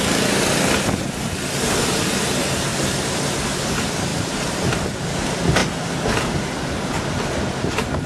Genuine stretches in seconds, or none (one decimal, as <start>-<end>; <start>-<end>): 0.0-4.1; 4.8-8.1